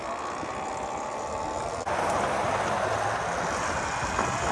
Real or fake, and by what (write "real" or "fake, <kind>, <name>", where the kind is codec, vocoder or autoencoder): real